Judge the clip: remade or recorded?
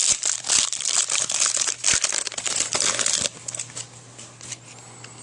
recorded